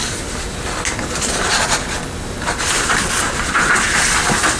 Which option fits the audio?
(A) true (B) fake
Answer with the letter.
A